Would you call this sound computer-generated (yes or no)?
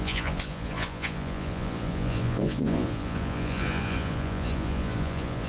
yes